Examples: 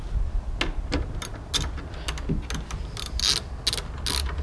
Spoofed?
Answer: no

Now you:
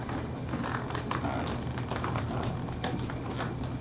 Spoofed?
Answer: no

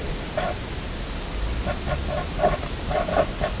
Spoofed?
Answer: no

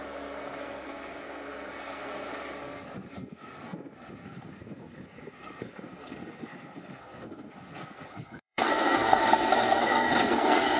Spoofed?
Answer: yes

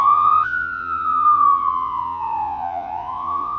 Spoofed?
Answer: yes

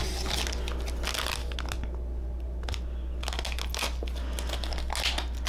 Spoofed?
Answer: no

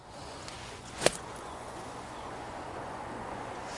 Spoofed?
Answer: yes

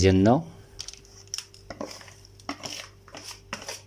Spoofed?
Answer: no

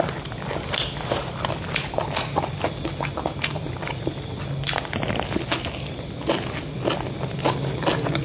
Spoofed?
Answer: no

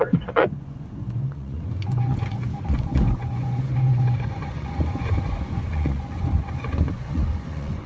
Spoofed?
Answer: yes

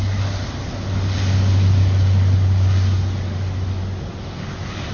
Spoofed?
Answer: no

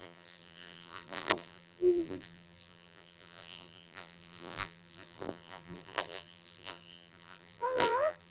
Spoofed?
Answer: yes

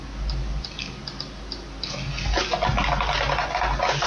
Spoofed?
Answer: no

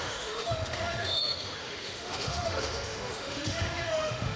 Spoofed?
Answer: yes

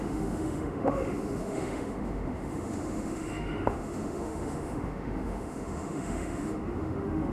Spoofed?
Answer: yes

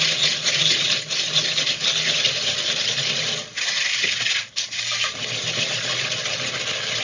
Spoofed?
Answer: no